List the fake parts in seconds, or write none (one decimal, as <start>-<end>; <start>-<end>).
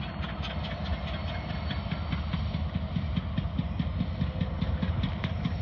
none